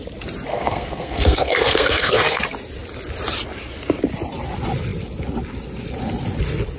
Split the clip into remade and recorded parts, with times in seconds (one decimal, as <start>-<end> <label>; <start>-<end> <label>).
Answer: 0.0-0.5 recorded; 0.5-2.4 remade; 2.4-6.8 recorded